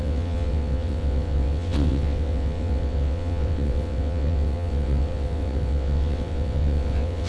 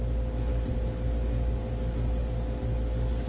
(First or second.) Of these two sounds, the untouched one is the second